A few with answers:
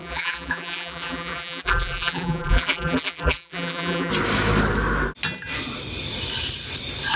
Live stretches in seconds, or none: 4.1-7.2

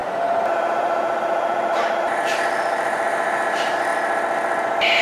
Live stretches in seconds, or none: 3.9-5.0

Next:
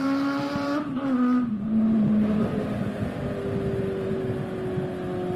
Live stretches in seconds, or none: 3.2-5.4

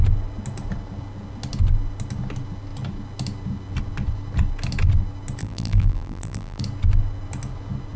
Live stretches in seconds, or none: 0.0-5.4; 6.6-8.0

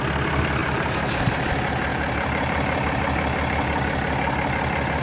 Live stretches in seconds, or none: 0.0-0.6; 1.5-1.9; 3.0-5.0

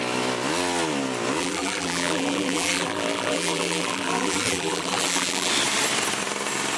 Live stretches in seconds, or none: 0.0-1.4; 5.5-6.8

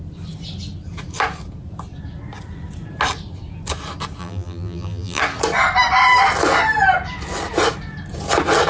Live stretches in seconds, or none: 0.0-4.2; 5.2-8.7